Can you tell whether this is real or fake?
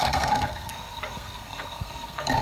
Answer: fake